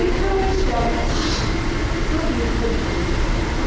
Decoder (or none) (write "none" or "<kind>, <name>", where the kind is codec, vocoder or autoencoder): none